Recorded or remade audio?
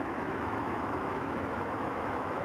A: remade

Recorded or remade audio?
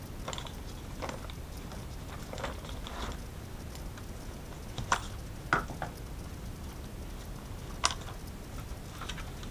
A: recorded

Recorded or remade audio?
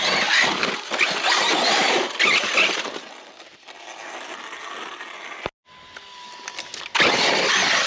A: recorded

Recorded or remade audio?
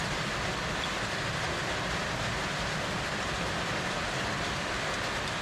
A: recorded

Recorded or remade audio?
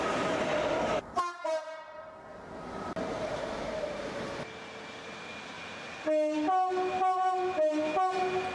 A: recorded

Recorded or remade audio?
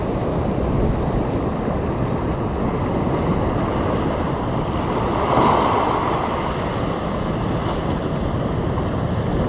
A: recorded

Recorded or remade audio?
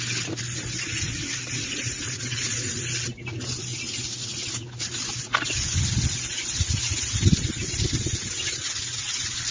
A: recorded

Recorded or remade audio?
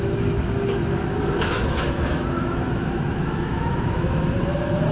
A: remade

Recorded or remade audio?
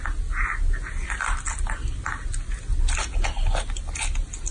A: recorded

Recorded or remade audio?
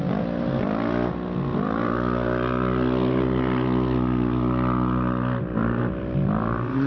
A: recorded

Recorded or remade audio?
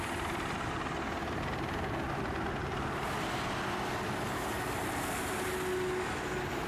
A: recorded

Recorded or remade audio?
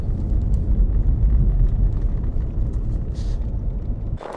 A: recorded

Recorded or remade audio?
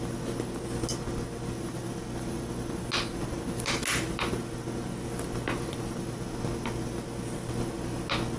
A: recorded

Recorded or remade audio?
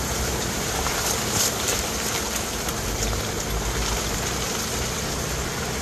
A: recorded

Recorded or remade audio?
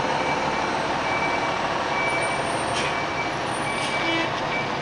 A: recorded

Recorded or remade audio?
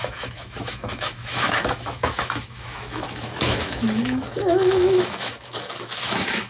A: remade